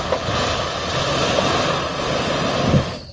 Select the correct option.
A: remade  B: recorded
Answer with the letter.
B